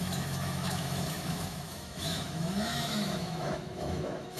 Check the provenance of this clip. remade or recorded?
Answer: remade